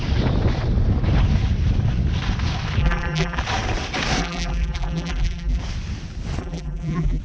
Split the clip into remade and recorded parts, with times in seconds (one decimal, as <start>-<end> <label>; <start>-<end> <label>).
0.0-2.8 recorded; 2.8-3.4 remade; 3.4-4.2 recorded; 4.2-5.6 remade; 5.6-6.4 recorded; 6.4-7.2 remade